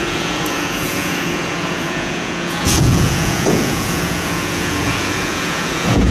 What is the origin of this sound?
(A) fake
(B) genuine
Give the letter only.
A